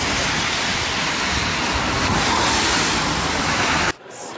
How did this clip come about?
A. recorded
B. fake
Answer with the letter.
A